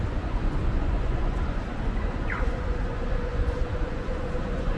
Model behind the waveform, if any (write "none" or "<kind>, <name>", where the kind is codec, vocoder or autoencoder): vocoder, Vocos